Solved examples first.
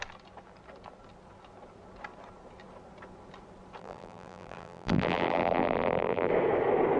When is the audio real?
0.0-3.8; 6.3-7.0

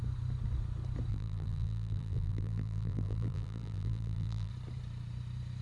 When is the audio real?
0.0-1.1; 4.5-5.6